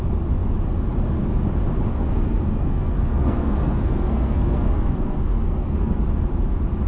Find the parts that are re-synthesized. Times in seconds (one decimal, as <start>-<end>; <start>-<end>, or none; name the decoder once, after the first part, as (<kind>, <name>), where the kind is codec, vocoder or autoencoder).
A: 1.9-6.0 (codec, SNAC)